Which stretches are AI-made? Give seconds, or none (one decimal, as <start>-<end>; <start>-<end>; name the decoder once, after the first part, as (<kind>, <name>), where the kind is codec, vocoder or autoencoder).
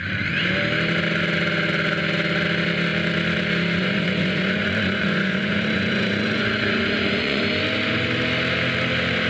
3.8-7.4 (vocoder, Vocos)